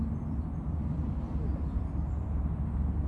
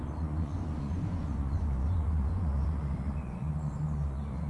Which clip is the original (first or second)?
first